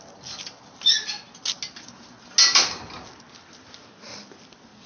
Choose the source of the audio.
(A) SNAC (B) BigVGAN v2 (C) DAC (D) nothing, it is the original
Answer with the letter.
D